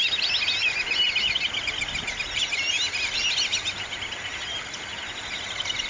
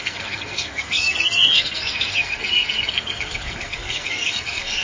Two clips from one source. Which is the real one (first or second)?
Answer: first